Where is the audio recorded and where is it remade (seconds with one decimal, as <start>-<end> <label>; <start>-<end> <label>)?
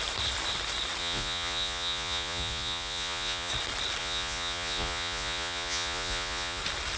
0.0-1.0 recorded; 1.0-3.5 remade; 3.5-4.0 recorded; 4.0-6.6 remade; 6.6-7.0 recorded